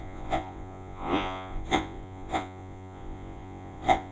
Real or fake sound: fake